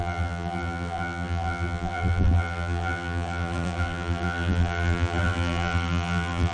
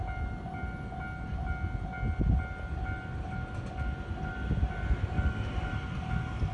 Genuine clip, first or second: second